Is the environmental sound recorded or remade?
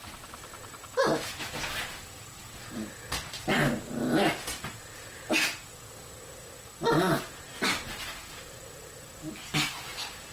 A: recorded